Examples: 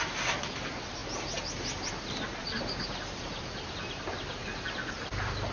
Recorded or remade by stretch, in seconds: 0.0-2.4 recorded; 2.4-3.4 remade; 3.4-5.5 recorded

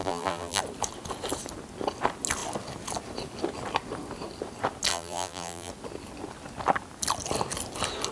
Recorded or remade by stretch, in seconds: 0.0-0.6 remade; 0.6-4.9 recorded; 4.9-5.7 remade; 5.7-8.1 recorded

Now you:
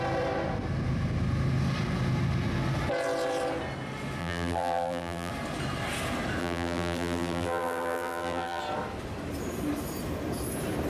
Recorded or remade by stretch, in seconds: 0.0-4.2 recorded; 4.2-5.3 remade; 5.3-6.4 recorded; 6.4-8.6 remade; 8.6-10.9 recorded